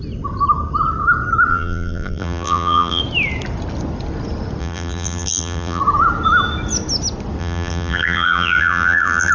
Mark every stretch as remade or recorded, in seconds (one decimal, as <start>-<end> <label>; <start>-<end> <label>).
0.0-1.5 recorded; 1.5-3.0 remade; 3.0-4.6 recorded; 4.6-5.8 remade; 5.8-7.4 recorded; 7.4-9.3 remade